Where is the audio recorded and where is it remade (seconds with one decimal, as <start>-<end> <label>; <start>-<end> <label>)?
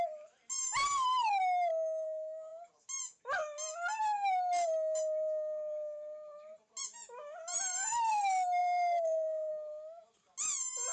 0.0-8.6 recorded; 8.6-9.5 remade; 9.5-10.9 recorded